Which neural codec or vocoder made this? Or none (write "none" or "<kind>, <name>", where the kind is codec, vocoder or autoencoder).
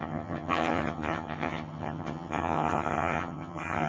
vocoder, HiFi-GAN